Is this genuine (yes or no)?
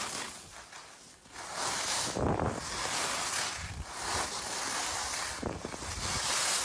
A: yes